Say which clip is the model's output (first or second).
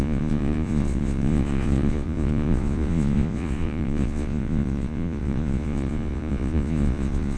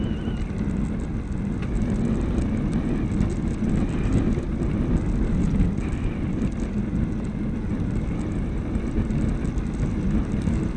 first